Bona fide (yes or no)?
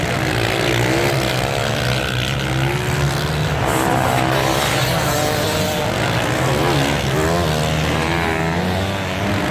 yes